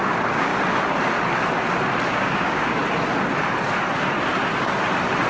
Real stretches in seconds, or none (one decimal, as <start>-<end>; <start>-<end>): 0.5-2.1; 2.8-5.3